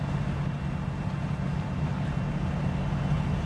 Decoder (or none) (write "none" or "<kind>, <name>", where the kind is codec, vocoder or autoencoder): none